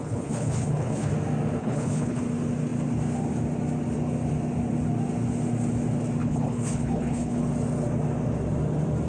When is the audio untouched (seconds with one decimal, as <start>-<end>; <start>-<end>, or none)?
1.1-1.6; 2.2-6.2; 7.4-9.1